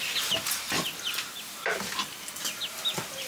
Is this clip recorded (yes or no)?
yes